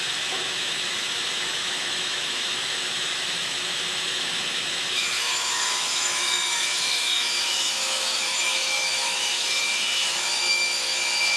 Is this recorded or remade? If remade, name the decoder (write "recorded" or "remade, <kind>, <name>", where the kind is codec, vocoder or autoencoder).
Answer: remade, autoencoder, DAC-VAE